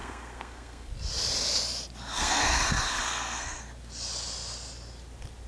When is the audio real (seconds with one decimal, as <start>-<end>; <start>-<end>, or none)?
0.9-2.1; 3.6-5.5